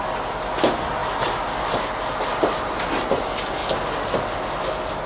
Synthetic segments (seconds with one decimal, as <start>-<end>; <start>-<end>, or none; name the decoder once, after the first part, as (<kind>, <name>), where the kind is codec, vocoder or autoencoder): none